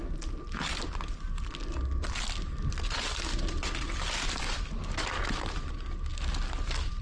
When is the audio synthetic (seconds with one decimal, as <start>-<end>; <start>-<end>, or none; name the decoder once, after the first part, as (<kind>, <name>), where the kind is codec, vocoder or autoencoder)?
none